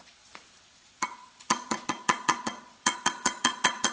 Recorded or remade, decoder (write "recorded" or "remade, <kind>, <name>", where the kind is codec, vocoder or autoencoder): remade, vocoder, Vocos